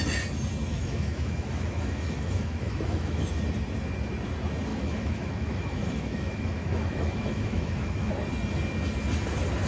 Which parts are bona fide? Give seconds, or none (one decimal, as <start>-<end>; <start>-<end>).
0.0-0.7; 3.4-4.7; 8.1-9.7